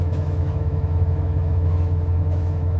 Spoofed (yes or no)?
yes